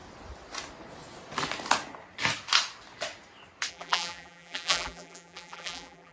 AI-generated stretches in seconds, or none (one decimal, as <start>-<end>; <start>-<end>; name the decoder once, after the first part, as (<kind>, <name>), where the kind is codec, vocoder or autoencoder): 3.7-6.1 (vocoder, BigVGAN v2)

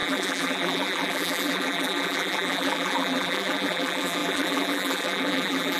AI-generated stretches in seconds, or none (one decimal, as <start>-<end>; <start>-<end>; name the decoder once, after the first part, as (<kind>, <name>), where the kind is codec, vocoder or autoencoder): 0.0-5.8 (vocoder, BigVGAN v2)

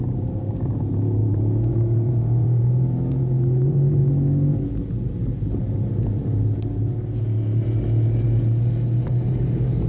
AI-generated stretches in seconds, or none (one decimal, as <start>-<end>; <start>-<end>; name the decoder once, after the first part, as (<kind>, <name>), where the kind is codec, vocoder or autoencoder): 0.0-4.0 (vocoder, BigVGAN v2); 9.0-9.9

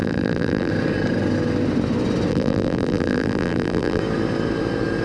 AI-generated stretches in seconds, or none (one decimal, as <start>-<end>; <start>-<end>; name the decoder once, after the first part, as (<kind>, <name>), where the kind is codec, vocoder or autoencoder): 0.0-0.7 (vocoder, BigVGAN v2); 2.3-4.0

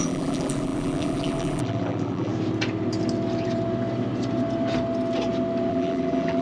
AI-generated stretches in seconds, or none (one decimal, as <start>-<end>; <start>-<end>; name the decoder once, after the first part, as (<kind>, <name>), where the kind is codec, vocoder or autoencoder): 0.0-2.3 (vocoder, BigVGAN v2); 5.7-6.4